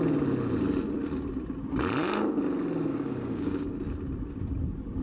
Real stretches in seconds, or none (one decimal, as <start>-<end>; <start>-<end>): 0.0-2.9; 3.7-5.0